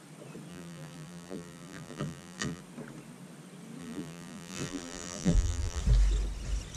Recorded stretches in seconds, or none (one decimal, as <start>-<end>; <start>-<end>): 0.0-0.5; 2.6-3.8; 5.8-6.8